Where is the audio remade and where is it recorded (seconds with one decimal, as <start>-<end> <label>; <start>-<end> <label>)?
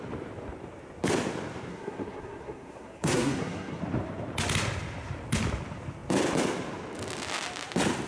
0.0-1.7 recorded; 1.7-3.8 remade; 3.8-8.1 recorded